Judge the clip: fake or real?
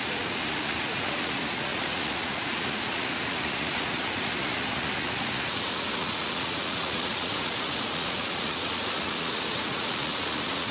fake